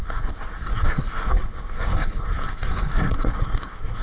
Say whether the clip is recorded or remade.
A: remade